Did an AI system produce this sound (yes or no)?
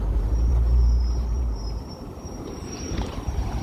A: yes